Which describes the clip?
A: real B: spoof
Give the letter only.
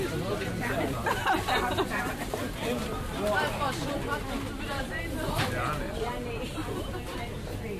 A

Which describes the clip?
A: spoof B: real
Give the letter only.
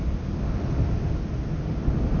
B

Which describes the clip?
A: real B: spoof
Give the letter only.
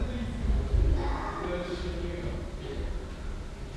A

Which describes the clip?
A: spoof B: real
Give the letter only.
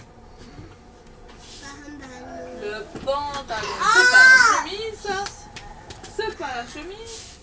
B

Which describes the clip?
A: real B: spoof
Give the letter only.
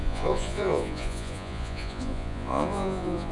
B